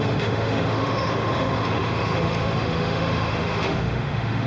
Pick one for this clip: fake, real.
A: fake